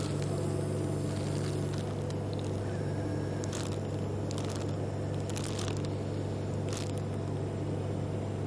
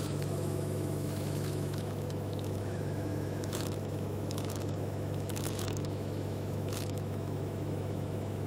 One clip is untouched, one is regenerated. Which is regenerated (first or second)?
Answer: second